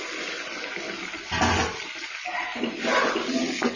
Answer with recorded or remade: recorded